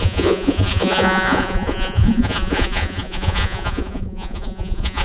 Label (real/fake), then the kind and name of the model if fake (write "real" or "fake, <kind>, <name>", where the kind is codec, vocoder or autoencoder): fake, vocoder, Vocos